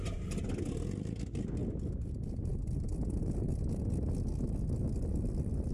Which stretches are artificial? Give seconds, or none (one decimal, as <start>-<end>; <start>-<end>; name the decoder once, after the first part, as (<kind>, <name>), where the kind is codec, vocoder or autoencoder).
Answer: none